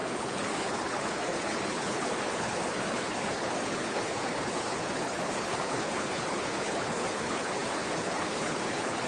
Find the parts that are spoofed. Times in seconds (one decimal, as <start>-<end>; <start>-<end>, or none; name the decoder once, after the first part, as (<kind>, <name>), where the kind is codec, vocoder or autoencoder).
0.0-9.1 (codec, HILCodec)